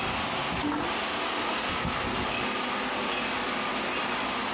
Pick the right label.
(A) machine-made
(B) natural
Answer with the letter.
B